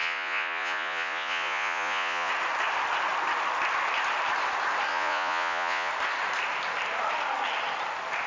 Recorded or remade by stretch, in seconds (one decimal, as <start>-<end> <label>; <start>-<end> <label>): 0.0-2.3 remade; 2.3-4.9 recorded; 4.9-5.9 remade; 5.9-8.3 recorded